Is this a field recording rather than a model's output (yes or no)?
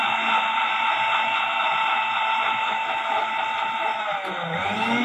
yes